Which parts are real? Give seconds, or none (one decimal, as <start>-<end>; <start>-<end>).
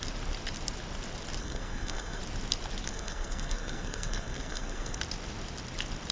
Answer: 0.0-1.4; 2.2-2.9; 5.0-6.1